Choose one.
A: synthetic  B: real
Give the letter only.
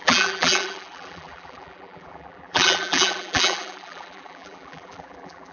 A